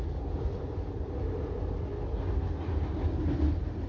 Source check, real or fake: real